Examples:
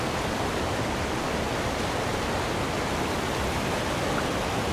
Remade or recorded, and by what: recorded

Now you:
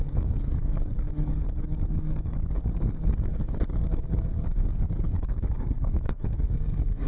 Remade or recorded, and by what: remade, codec, DAC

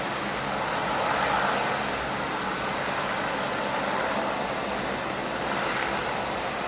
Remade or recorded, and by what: recorded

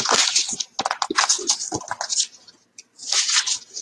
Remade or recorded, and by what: recorded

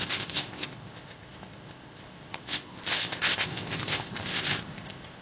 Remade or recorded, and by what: remade, codec, ZipCodec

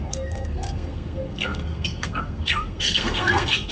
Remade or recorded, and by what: remade, codec, SNAC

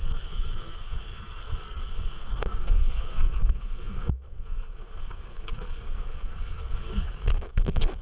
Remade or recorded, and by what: remade, codec, SNAC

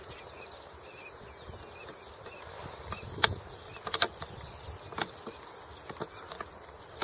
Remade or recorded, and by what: recorded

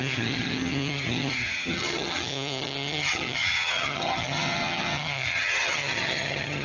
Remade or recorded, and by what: remade, vocoder, HiFi-GAN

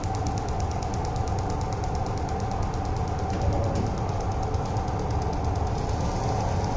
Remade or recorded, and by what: recorded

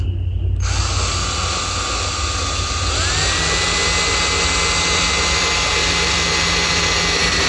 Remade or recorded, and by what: recorded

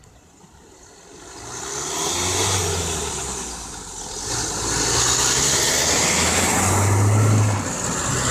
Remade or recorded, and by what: recorded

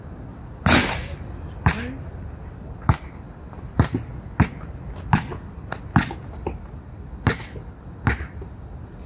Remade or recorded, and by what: recorded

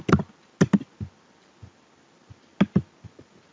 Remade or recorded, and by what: recorded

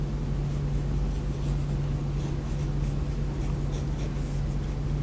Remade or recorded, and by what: recorded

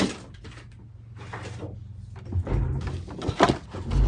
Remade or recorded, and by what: recorded